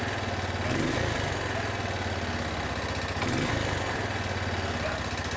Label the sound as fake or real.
real